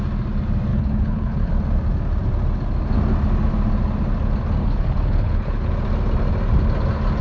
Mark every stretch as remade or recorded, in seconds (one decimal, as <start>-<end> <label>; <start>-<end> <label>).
0.0-0.7 recorded; 0.7-1.5 remade; 1.5-4.6 recorded; 4.6-5.7 remade; 5.7-7.2 recorded